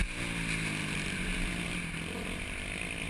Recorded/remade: recorded